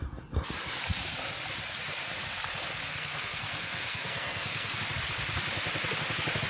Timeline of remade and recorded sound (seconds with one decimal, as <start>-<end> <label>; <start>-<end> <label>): 0.0-2.9 recorded; 2.9-4.8 remade; 4.8-6.5 recorded